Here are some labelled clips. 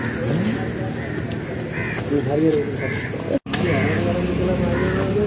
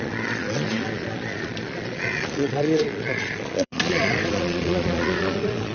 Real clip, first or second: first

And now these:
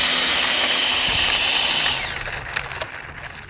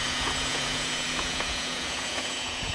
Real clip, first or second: first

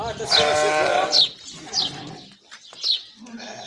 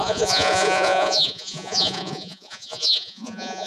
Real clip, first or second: first